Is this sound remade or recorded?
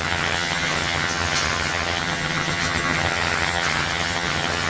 remade